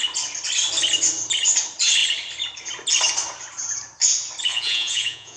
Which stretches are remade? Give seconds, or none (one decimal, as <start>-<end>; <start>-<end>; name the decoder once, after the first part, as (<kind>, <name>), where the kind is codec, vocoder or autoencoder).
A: 4.5-5.4 (vocoder, Vocos)